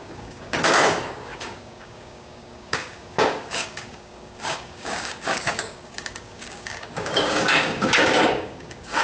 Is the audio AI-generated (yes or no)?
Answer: yes